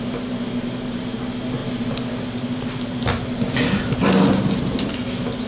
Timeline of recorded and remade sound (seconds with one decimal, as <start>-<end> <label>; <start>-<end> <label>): 0.0-5.5 recorded